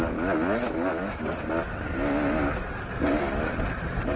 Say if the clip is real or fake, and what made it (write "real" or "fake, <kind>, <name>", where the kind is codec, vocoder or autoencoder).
real